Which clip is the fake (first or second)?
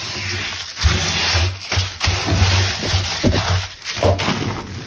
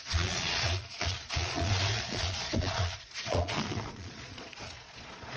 second